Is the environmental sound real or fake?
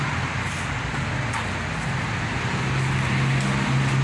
real